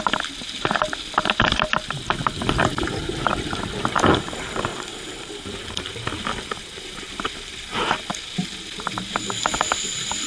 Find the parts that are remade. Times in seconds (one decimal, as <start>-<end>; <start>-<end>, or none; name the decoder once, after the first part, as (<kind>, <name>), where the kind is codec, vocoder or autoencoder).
4.7-5.8 (vocoder, BigVGAN v2)